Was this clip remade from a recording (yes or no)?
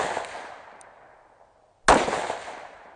no